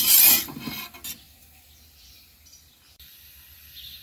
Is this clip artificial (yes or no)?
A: no